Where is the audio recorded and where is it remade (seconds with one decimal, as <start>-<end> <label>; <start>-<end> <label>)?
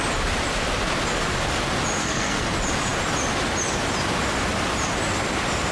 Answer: 0.0-2.0 recorded; 2.0-2.5 remade; 2.5-5.7 recorded